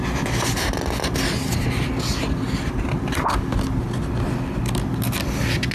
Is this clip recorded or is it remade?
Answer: recorded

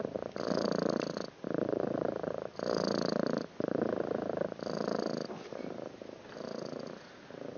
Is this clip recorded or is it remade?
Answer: recorded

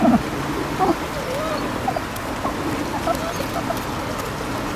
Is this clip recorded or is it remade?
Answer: recorded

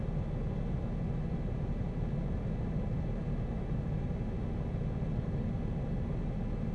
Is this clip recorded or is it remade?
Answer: recorded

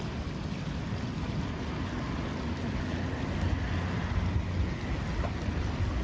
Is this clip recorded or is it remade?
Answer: recorded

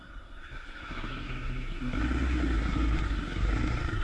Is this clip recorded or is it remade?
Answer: remade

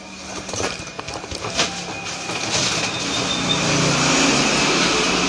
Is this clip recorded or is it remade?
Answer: recorded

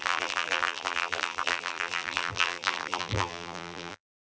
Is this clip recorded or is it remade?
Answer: remade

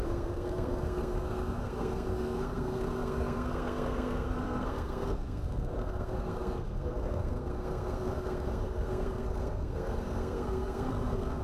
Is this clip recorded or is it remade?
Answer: remade